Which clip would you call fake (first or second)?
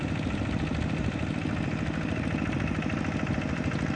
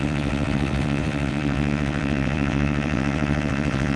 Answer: second